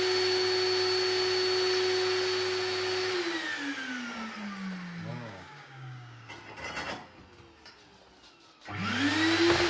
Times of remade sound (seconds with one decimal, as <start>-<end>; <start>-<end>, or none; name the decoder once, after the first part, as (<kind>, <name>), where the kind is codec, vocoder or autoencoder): 5.1-6.3 (codec, DAC)